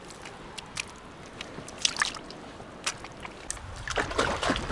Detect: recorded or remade recorded